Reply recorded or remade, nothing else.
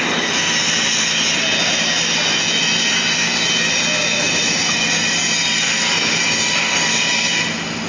recorded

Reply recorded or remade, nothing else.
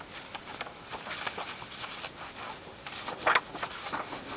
recorded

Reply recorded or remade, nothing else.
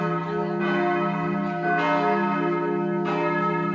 recorded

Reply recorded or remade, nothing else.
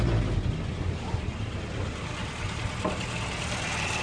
recorded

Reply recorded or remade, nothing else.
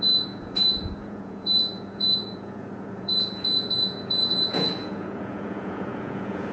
remade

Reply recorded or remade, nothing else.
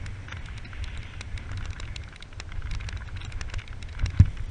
recorded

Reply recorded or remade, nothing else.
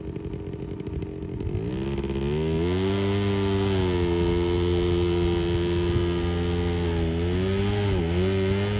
recorded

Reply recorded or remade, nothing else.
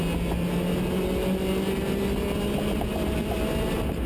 recorded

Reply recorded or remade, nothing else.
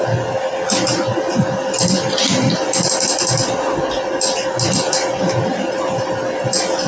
recorded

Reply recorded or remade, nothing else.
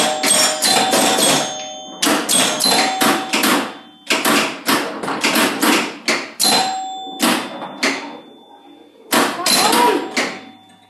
recorded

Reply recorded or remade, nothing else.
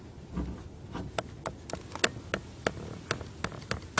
recorded